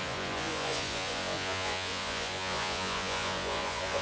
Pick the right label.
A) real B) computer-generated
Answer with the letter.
B